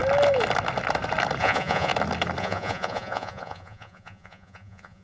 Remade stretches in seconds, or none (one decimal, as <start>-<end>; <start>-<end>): 1.4-1.9; 2.4-5.0